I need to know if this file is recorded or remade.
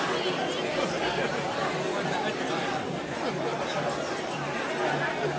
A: recorded